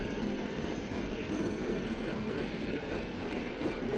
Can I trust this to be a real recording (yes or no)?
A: no